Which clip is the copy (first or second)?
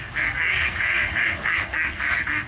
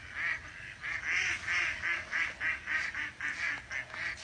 first